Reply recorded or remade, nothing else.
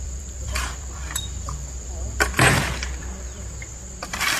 remade